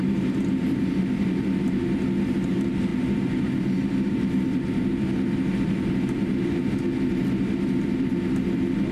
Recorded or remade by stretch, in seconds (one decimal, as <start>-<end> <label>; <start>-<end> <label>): 0.0-8.9 recorded